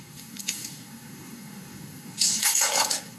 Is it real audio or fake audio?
fake